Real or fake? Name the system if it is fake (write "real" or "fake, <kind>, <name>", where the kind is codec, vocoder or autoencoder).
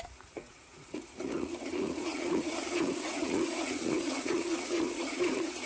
fake, vocoder, Vocos